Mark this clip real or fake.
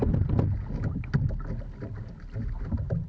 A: real